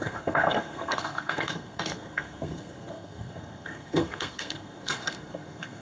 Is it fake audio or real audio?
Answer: fake